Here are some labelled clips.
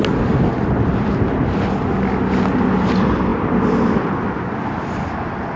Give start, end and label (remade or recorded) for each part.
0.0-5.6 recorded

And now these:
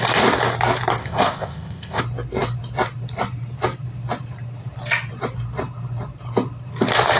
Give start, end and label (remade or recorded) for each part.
0.0-1.0 recorded; 1.0-2.0 remade; 2.0-7.2 recorded

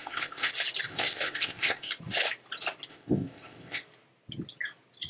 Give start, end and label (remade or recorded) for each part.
0.0-0.5 remade; 0.5-0.9 recorded; 0.9-1.9 remade; 1.9-2.9 recorded; 2.9-3.8 remade; 3.8-5.1 recorded

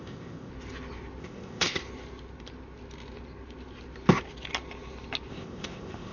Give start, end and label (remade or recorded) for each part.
0.0-0.5 remade; 0.5-1.2 recorded; 1.2-1.8 remade; 1.8-5.3 recorded; 5.3-6.1 remade

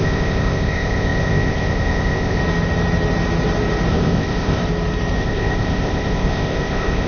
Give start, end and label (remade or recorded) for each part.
0.0-2.4 remade; 2.4-3.9 recorded; 3.9-4.6 remade; 4.6-5.2 recorded; 5.2-7.1 remade